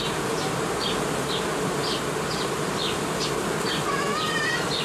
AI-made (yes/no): yes